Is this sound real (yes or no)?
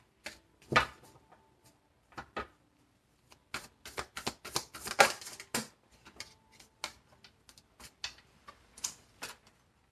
yes